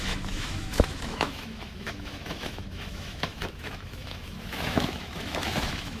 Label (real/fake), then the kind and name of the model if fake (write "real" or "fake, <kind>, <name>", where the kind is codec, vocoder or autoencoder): fake, autoencoder, DAC-VAE